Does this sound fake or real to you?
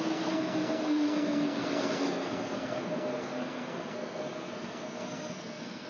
fake